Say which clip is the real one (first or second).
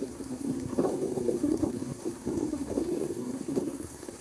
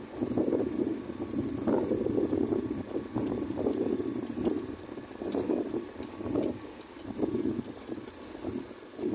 second